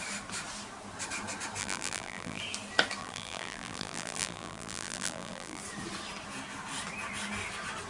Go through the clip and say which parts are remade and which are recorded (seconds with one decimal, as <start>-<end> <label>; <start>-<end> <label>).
0.0-1.6 recorded; 1.6-2.4 remade; 2.4-3.0 recorded; 3.0-5.6 remade; 5.6-7.9 recorded